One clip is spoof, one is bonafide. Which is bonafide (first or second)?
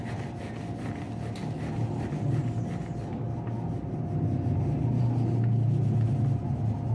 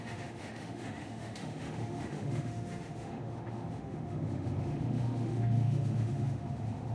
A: first